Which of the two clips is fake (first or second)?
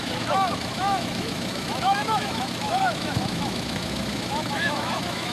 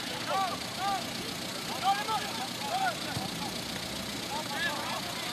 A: first